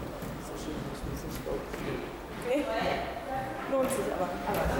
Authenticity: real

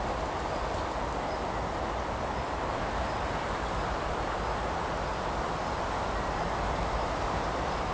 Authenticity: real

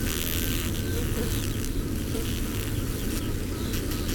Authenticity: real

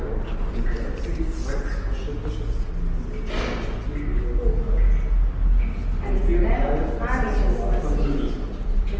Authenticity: real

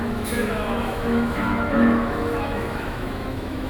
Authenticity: fake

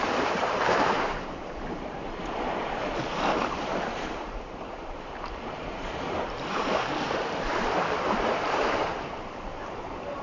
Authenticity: fake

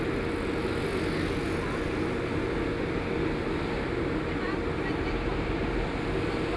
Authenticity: real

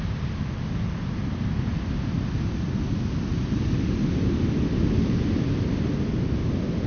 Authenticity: real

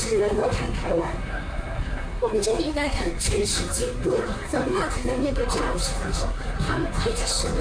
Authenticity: fake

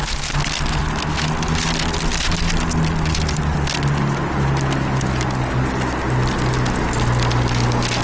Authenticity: real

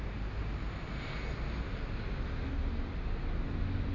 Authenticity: real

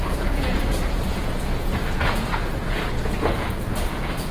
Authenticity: fake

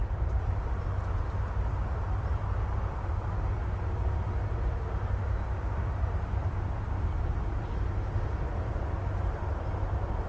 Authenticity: real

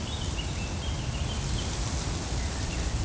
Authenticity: real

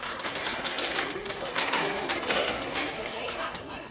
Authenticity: fake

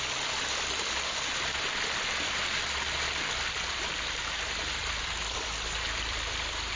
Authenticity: fake